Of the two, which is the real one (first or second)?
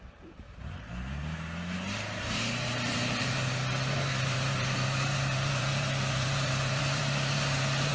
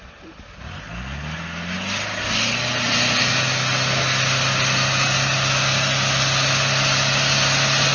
second